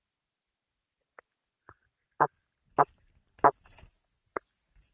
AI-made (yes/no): no